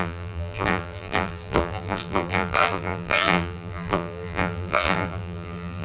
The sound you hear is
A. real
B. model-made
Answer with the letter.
B